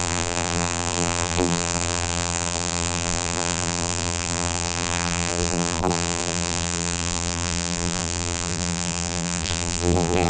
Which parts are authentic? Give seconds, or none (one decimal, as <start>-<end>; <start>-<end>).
none